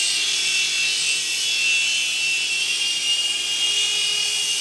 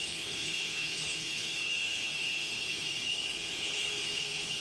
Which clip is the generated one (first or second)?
second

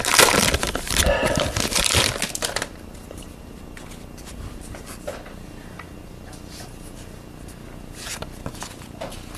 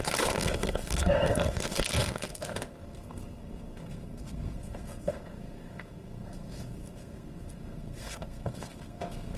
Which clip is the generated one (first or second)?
second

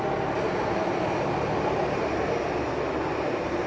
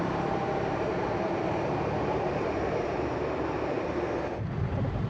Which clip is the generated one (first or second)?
second